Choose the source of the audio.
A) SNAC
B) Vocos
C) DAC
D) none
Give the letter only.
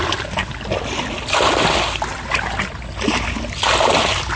D